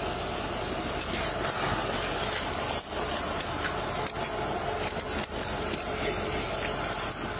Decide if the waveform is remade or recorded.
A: recorded